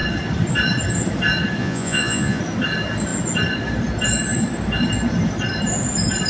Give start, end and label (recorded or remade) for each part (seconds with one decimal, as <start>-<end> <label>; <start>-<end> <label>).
0.0-1.6 recorded; 1.6-2.4 remade; 2.4-6.3 recorded